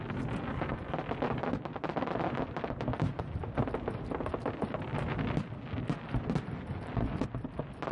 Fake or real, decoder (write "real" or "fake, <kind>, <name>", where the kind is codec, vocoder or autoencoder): real